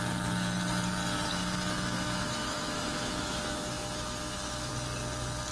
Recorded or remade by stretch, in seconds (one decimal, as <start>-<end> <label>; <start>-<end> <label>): 0.0-1.4 recorded; 1.4-4.7 remade; 4.7-5.5 recorded